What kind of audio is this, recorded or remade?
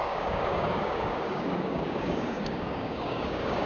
remade